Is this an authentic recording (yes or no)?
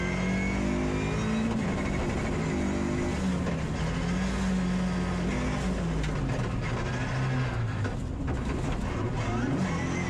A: yes